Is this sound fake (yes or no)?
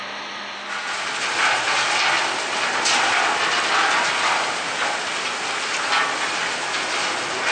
no